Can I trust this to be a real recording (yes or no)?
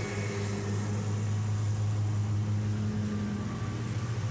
yes